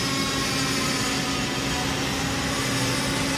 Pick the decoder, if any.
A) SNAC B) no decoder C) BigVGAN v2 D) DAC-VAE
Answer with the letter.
B